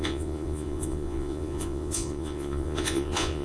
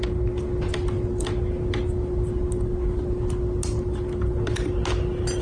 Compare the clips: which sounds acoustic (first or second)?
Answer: second